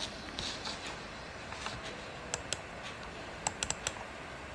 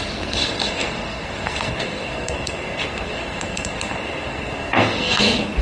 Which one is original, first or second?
first